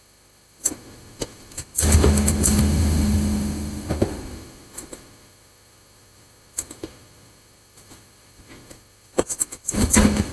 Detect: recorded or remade remade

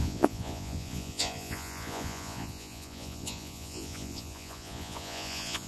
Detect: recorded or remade remade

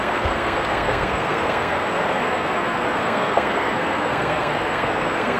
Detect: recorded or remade remade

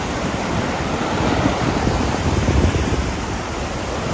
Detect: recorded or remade recorded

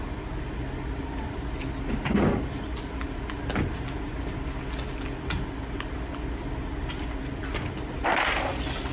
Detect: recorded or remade recorded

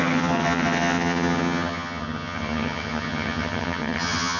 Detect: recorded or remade remade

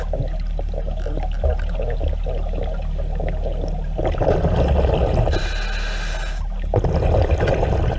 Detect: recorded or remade recorded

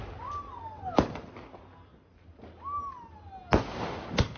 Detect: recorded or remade recorded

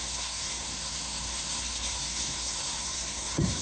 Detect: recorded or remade remade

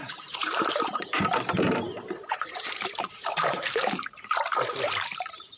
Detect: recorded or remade remade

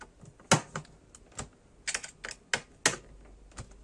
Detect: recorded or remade recorded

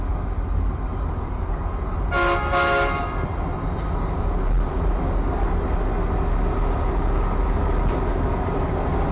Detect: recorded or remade recorded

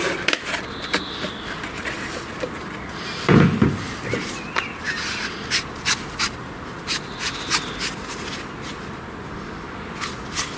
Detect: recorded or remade recorded